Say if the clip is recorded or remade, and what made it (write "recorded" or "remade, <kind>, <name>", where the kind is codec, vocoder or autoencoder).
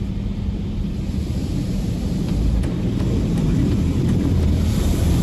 remade, vocoder, BigVGAN v2